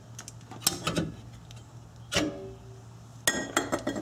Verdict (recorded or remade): recorded